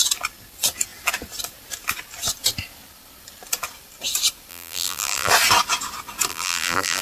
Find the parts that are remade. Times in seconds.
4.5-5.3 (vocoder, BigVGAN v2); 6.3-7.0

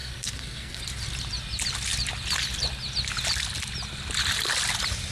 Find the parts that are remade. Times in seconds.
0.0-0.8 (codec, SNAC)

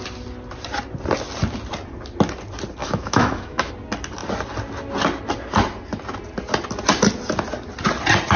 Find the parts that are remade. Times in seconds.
2.8-3.7 (autoencoder, DAC-VAE)

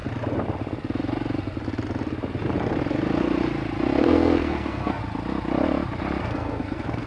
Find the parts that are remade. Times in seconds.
4.0-5.0 (codec, SNAC); 6.2-7.1

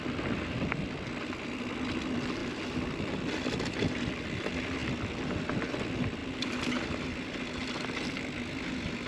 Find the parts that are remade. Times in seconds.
none

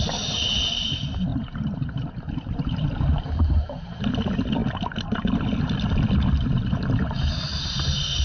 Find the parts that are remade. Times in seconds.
1.3-4.0 (vocoder, BigVGAN v2)

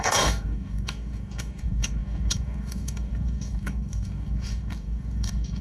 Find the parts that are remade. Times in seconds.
0.0-5.6 (codec, DAC)

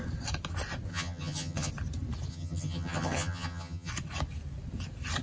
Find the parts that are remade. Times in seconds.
0.9-1.7 (vocoder, HiFi-GAN); 2.3-3.9